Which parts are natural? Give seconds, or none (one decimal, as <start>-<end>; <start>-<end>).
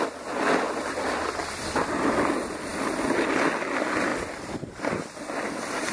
0.0-2.7; 3.3-4.1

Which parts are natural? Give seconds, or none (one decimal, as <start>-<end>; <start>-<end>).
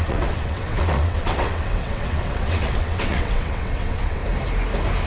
4.2-5.1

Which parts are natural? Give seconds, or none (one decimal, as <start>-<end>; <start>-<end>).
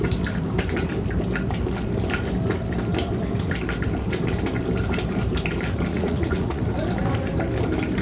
0.0-5.9; 6.6-8.0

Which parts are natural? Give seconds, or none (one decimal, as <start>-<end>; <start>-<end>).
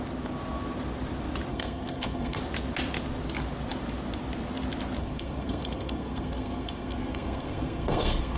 0.0-1.5; 2.4-5.0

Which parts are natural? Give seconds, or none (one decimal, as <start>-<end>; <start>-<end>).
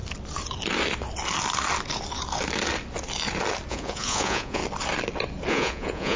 0.0-3.7; 4.6-5.5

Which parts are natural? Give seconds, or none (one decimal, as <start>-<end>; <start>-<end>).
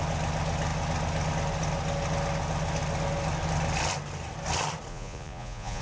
0.0-4.9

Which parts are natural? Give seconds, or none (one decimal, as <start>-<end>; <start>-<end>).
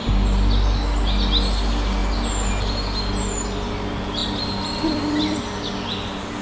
0.0-6.4